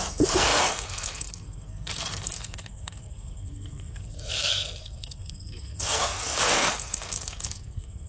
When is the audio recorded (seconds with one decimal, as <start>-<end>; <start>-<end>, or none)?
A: none